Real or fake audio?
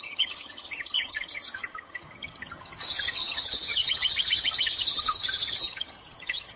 fake